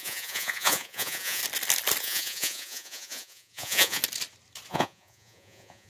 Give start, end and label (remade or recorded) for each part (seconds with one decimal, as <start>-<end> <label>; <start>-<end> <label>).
0.0-1.4 remade; 1.4-2.0 recorded; 2.0-4.0 remade; 4.0-4.7 recorded; 4.7-5.9 remade